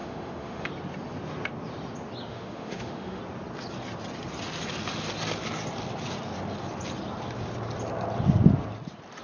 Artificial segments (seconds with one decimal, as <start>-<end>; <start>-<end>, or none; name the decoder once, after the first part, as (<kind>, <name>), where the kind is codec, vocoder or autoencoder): 0.0-0.7 (autoencoder, DAC-VAE); 2.3-3.2